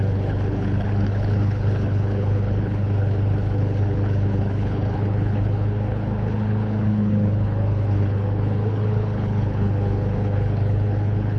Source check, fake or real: fake